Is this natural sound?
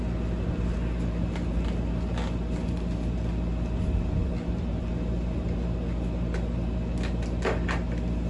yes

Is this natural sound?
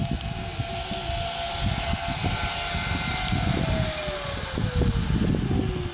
yes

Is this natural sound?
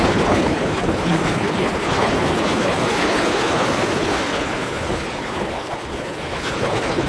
no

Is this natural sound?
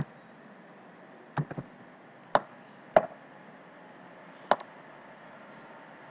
yes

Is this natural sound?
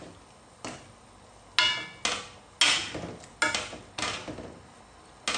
yes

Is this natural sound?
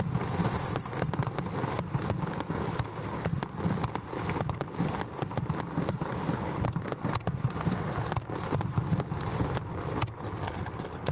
yes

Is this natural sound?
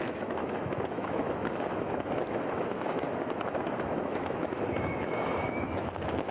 no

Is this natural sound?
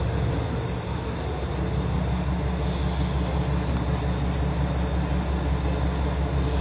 yes